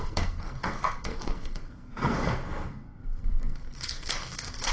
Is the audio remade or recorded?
remade